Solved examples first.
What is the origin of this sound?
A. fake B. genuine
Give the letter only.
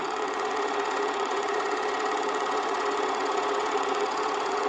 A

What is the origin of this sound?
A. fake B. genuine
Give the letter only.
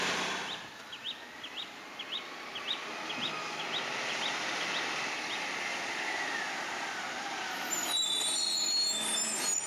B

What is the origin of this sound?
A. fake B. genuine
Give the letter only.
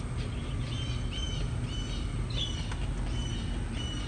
B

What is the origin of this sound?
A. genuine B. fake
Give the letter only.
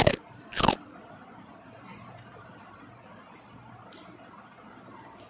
A